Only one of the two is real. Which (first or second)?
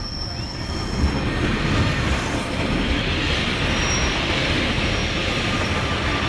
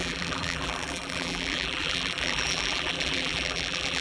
first